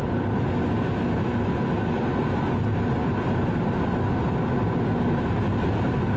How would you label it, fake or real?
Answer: real